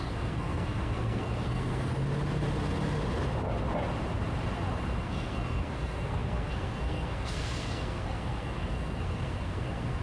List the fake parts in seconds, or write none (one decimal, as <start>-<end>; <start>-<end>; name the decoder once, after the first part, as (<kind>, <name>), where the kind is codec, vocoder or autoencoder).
0.0-1.9 (codec, SNAC); 5.0-10.0